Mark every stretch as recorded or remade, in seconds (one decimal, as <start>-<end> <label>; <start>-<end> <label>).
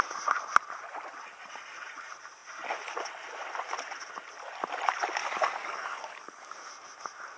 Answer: 0.0-5.2 recorded; 5.2-6.7 remade; 6.7-7.4 recorded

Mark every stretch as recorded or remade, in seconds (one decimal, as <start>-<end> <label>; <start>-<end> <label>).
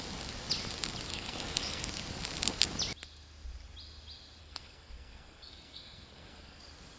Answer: 0.0-1.1 recorded; 1.1-1.9 remade; 1.9-4.4 recorded; 4.4-6.6 remade; 6.6-7.0 recorded